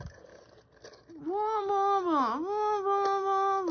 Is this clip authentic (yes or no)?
yes